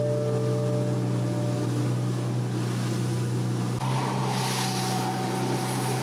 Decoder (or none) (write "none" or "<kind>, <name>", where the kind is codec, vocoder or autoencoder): none